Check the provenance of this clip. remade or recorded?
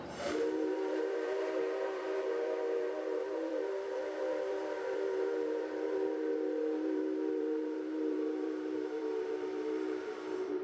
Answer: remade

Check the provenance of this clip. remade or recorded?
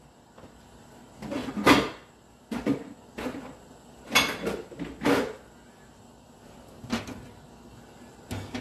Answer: recorded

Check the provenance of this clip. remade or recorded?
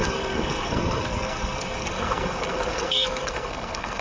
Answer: remade